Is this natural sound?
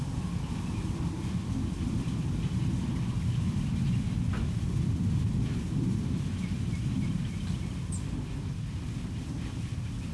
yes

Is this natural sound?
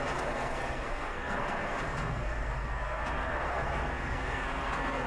no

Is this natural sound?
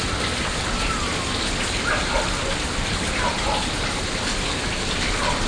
yes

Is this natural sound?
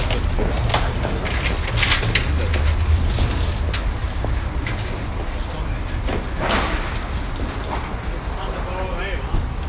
yes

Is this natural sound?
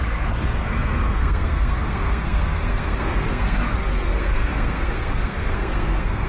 no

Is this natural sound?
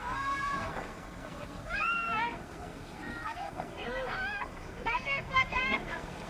no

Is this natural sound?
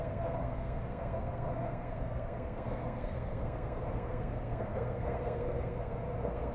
no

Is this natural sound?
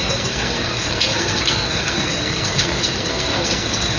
no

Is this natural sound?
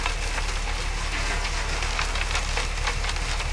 yes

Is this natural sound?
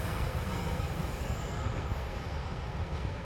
no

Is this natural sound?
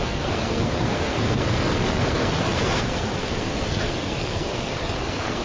no